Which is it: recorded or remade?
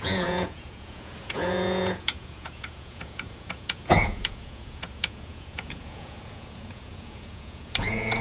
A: remade